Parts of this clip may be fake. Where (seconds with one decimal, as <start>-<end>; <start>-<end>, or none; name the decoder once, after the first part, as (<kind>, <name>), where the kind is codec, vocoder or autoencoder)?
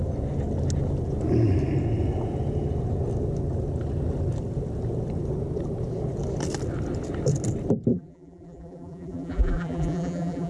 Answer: 7.9-10.5 (vocoder, BigVGAN v2)